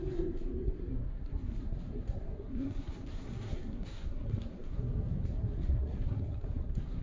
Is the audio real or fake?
fake